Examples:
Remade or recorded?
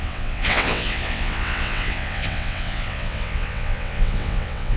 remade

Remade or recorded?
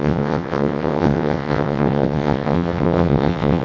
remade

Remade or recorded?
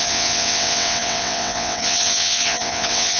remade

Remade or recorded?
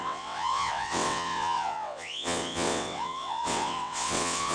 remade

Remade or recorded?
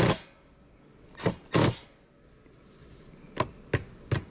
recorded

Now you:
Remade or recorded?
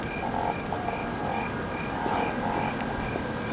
recorded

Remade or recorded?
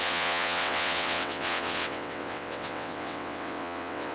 remade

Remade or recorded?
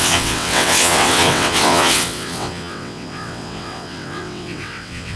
remade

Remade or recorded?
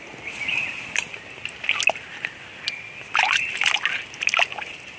recorded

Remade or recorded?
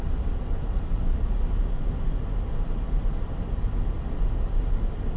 recorded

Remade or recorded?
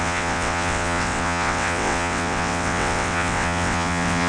remade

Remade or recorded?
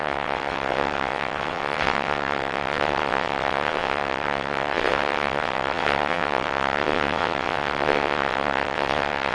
remade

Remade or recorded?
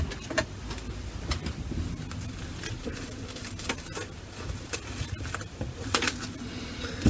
recorded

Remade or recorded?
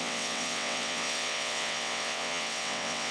remade